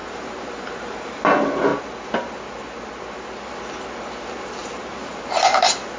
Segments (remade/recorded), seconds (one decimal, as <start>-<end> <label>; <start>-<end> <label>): 0.0-1.2 remade; 1.2-4.6 recorded; 4.6-5.4 remade; 5.4-6.0 recorded